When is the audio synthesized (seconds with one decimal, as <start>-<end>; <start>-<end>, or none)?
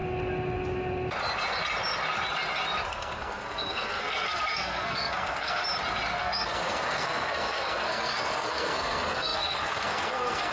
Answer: 2.9-5.6; 6.2-10.5